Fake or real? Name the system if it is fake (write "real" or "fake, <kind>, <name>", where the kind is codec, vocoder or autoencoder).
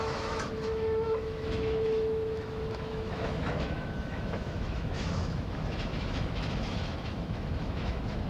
fake, autoencoder, DAC-VAE